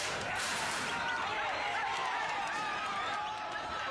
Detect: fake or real fake